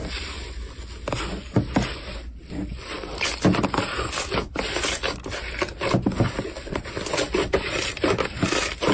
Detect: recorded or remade recorded